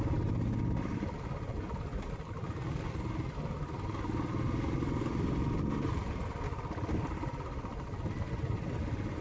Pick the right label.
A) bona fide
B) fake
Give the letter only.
A